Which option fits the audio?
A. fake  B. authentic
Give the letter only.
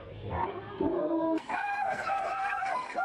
A